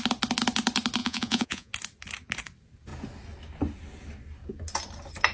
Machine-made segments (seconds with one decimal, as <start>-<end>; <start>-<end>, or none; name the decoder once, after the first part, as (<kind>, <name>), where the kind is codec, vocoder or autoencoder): 1.0-1.7 (vocoder, Vocos)